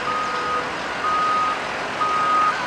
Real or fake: real